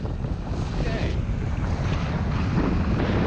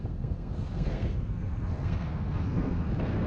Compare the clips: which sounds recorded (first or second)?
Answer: first